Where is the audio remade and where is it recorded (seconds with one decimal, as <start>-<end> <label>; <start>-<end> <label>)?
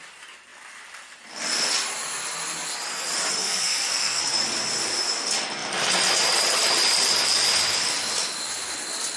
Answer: 0.0-3.4 recorded; 3.4-4.2 remade; 4.2-9.2 recorded